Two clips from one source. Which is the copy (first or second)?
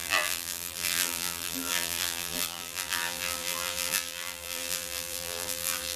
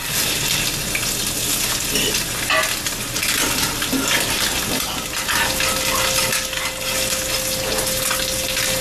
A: first